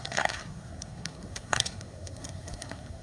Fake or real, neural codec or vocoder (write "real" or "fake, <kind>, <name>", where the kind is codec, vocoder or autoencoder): fake, codec, SNAC